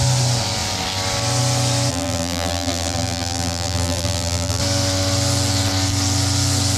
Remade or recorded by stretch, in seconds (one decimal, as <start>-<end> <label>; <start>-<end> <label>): 0.0-1.9 recorded; 1.9-4.6 remade; 4.6-6.8 recorded